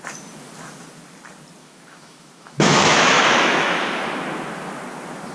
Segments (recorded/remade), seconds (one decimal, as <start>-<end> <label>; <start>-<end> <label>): 0.0-1.6 recorded; 1.6-3.8 remade; 3.8-5.3 recorded

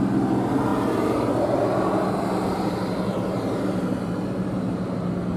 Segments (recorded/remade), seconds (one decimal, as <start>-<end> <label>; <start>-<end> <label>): 0.0-5.4 recorded

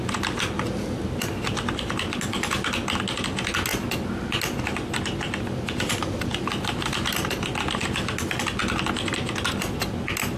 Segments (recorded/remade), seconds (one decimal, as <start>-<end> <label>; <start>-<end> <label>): 0.0-10.4 recorded

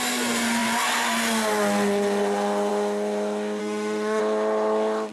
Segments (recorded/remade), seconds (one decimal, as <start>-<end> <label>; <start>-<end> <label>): 0.0-3.6 recorded; 3.6-4.2 remade; 4.2-5.1 recorded

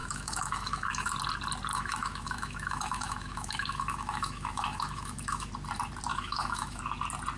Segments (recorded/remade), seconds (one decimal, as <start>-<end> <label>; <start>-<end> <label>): 0.0-1.1 remade; 1.1-1.7 recorded; 1.7-5.5 remade; 5.5-6.1 recorded; 6.1-6.8 remade; 6.8-7.4 recorded

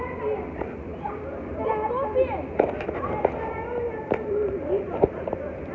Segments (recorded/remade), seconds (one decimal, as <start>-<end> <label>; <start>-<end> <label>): 0.0-5.7 recorded